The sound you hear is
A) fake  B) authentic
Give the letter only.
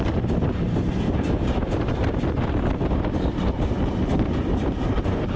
A